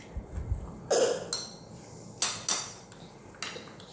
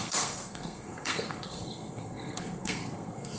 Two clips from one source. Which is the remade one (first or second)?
second